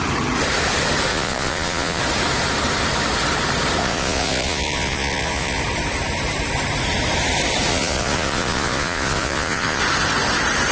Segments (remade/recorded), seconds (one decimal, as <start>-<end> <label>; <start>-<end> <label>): 0.0-1.1 recorded; 1.1-2.0 remade; 2.0-3.8 recorded; 3.8-5.6 remade; 5.6-7.7 recorded; 7.7-9.8 remade; 9.8-10.7 recorded